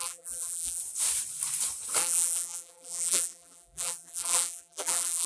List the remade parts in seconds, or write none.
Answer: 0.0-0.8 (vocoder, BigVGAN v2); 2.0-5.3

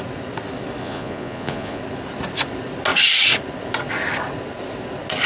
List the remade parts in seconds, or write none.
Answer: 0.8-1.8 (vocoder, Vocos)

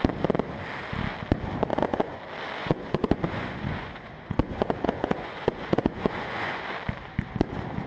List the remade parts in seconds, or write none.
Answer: 1.7-2.2 (vocoder, Vocos); 2.6-6.6

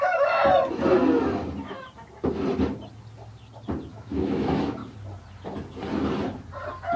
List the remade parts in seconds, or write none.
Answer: 0.0-0.4 (autoencoder, DAC-VAE); 3.9-4.8

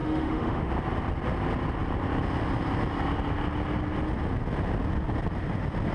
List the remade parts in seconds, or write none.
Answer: 0.0-0.7 (autoencoder, DAC-VAE)